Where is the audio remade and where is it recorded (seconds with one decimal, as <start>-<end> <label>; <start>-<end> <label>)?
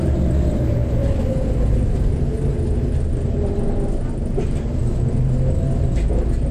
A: 0.0-6.5 recorded